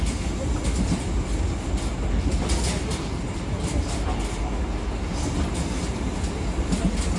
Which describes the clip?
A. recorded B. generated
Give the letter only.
A